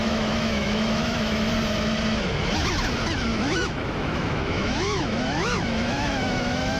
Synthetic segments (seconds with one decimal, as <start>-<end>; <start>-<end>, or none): 0.0-1.5; 3.3-6.8